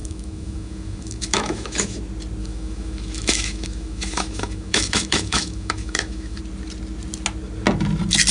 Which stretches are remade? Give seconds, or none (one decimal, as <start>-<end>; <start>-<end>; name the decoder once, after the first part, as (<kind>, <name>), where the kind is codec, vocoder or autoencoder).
0.0-2.0 (autoencoder, DAC-VAE); 2.4-6.4